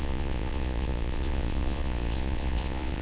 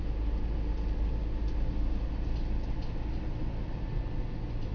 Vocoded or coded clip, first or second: first